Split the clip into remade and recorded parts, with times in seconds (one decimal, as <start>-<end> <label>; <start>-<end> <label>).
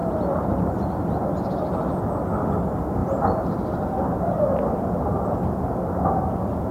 0.0-0.9 remade; 0.9-3.0 recorded; 3.0-4.9 remade; 4.9-6.7 recorded